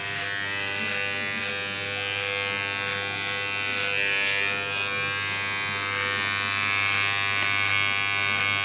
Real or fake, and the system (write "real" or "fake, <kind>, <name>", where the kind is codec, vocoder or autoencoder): real